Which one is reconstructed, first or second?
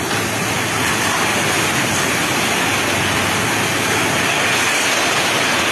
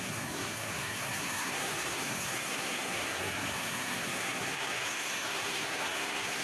second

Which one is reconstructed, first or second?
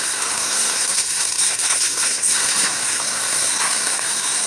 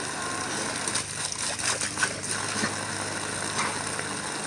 first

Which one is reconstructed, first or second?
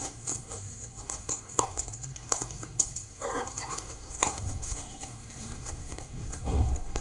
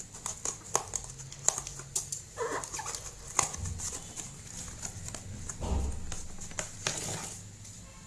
first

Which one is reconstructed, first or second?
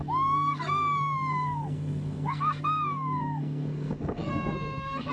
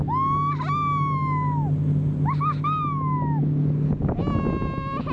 first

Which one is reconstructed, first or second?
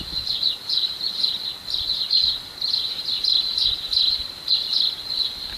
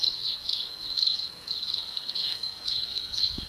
second